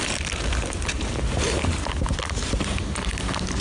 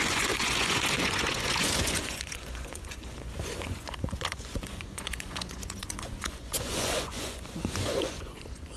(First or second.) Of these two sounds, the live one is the first